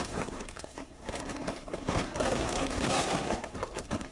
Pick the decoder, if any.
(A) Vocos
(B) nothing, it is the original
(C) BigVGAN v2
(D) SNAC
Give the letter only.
D